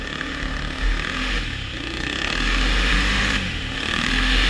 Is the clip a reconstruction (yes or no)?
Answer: yes